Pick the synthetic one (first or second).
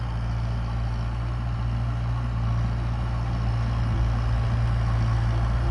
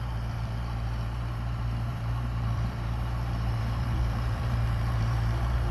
second